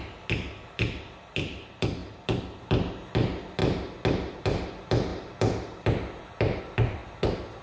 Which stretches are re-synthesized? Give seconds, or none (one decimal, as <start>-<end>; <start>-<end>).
0.0-3.6; 4.4-7.0